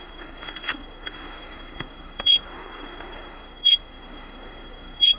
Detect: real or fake fake